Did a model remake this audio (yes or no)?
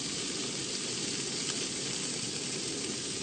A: no